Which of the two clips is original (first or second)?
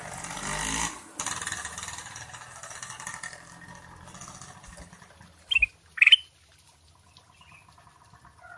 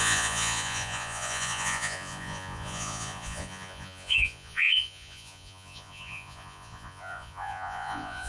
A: first